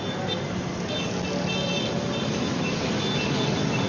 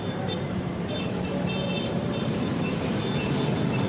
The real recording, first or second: first